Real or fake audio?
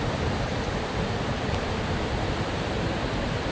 fake